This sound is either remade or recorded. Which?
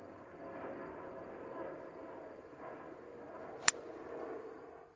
recorded